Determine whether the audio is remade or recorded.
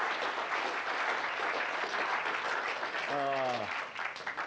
recorded